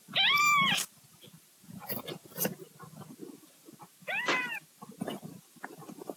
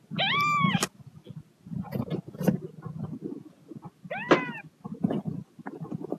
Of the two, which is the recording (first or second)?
second